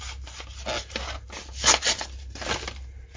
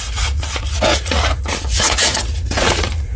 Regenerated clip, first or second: second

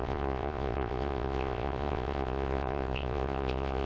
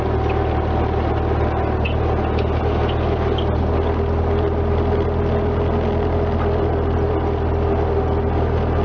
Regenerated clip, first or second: first